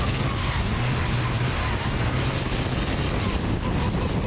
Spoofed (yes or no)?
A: no